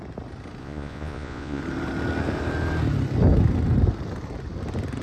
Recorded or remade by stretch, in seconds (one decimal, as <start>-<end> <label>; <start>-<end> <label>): 0.0-0.6 recorded; 0.6-1.6 remade; 1.6-5.0 recorded